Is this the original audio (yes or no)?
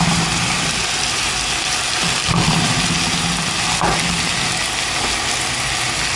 yes